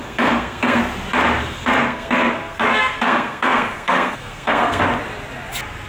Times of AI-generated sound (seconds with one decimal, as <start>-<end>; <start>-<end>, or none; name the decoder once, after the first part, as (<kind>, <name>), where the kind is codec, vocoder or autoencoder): 0.0-0.8 (codec, SNAC); 1.4-4.8